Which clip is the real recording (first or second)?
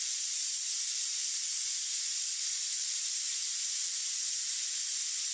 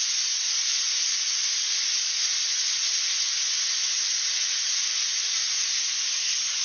second